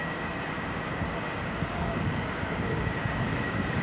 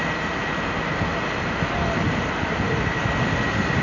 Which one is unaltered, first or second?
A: second